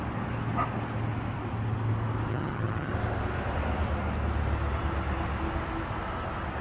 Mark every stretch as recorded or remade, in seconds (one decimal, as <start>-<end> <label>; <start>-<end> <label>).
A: 0.0-2.3 recorded; 2.3-2.9 remade; 2.9-6.6 recorded